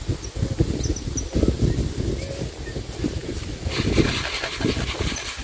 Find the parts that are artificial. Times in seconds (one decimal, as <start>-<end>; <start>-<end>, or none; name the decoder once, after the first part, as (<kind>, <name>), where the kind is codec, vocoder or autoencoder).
none

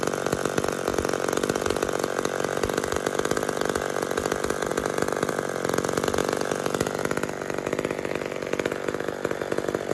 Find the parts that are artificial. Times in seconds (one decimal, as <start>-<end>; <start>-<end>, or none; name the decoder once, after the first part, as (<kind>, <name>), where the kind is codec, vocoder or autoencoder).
none

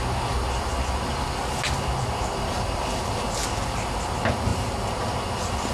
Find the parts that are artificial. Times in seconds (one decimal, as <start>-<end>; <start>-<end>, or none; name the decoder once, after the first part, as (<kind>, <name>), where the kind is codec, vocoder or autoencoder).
4.5-5.0 (vocoder, BigVGAN v2)

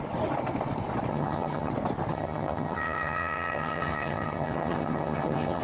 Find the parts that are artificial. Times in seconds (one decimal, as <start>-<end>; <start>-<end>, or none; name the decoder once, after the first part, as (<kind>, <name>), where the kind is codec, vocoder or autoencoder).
1.1-1.7 (vocoder, HiFi-GAN); 2.1-5.6